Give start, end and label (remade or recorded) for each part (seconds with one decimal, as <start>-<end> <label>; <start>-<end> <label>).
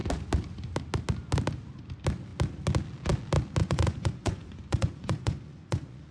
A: 0.0-3.6 recorded; 3.6-6.1 remade